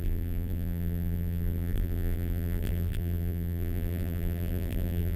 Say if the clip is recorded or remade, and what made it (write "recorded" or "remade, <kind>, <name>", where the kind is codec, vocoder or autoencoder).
remade, vocoder, BigVGAN v2